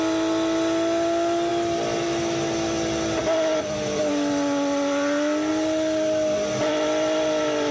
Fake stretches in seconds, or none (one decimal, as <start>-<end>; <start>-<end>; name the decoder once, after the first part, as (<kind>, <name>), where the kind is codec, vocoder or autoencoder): none